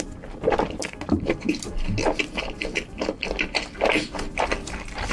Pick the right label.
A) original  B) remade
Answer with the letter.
A